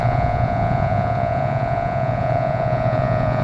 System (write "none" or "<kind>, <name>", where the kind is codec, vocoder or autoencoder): vocoder, Vocos